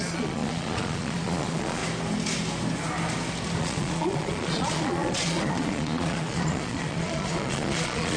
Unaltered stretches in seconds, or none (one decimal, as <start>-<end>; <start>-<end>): 1.8-3.6